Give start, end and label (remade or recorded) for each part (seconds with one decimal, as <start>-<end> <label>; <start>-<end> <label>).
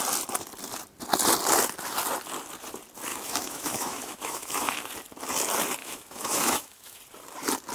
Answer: 0.0-3.1 recorded; 3.1-4.9 remade; 4.9-5.8 recorded; 5.8-7.0 remade; 7.0-7.7 recorded